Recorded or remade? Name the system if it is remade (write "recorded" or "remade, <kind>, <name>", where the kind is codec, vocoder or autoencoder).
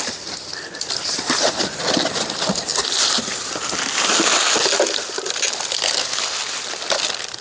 recorded